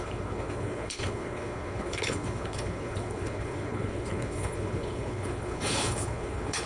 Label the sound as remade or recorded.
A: remade